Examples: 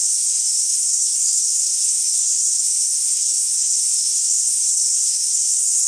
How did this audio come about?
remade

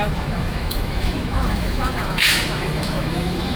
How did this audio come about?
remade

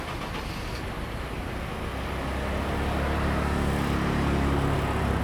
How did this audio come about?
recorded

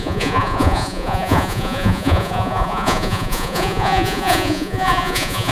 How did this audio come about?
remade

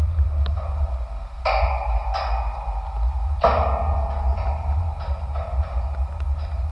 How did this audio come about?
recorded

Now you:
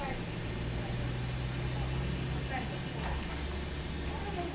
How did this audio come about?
recorded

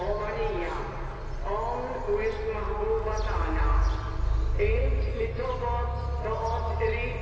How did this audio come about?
recorded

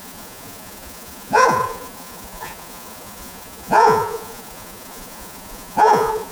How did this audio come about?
remade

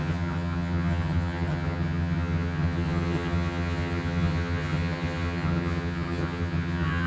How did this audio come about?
remade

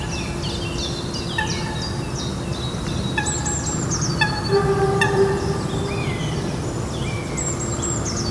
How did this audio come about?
recorded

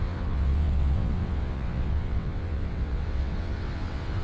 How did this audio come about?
remade